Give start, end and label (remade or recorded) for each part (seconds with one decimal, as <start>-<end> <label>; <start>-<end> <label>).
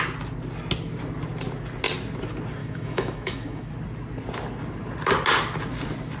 0.0-2.6 recorded; 2.6-3.7 remade; 3.7-6.2 recorded